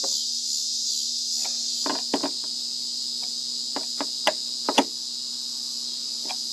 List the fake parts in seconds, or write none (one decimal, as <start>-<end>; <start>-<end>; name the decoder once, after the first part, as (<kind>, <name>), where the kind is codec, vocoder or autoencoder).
none